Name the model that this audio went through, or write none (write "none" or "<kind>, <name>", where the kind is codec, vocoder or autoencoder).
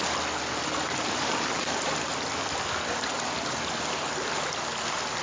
none